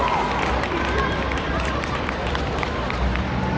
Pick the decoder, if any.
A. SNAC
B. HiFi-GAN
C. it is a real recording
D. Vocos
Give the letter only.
C